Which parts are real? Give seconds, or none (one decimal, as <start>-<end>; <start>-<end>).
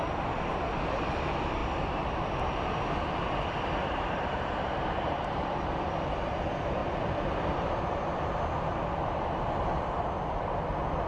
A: 0.0-3.8; 5.7-11.1